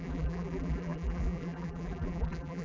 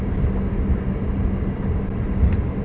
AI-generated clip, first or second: first